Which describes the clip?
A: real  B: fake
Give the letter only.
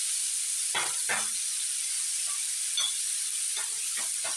A